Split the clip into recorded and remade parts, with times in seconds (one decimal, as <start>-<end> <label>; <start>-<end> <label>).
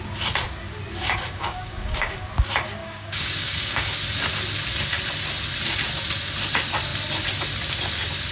0.0-1.0 recorded; 1.0-2.3 remade; 2.3-2.8 recorded; 2.8-3.9 remade; 3.9-8.3 recorded